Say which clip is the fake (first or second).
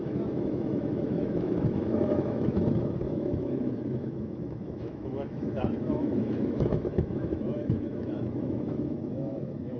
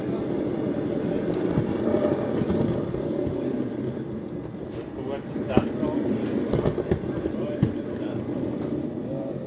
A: first